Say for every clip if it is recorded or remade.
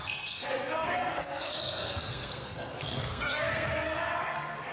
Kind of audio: remade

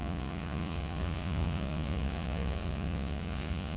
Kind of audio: remade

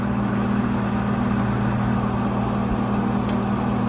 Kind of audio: recorded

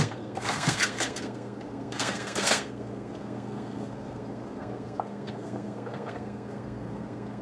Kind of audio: remade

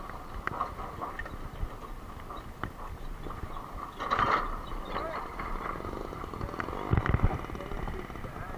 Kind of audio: recorded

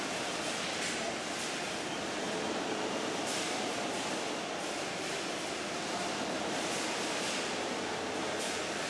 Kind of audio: remade